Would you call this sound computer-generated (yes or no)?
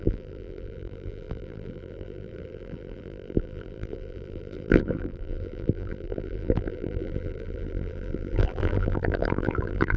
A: yes